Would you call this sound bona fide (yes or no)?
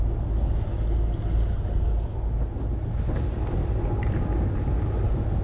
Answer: yes